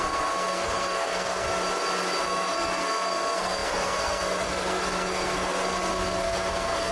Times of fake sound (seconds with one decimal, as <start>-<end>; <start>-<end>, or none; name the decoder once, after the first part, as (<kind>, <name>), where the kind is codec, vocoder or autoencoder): 0.0-1.5 (codec, SNAC); 2.2-6.9